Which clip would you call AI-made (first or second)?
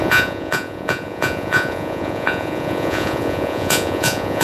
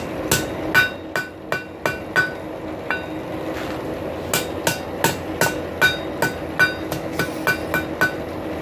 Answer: first